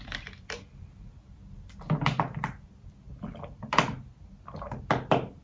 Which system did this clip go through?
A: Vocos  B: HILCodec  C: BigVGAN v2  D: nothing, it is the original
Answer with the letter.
D